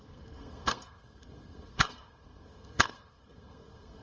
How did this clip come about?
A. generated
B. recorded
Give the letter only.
A